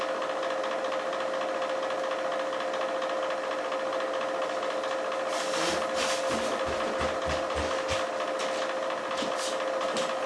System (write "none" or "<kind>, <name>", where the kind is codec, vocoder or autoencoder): none